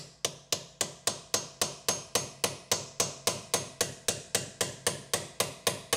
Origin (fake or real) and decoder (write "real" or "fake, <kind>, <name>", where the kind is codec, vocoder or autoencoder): real